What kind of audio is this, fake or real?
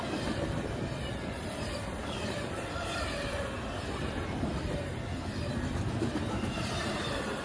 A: fake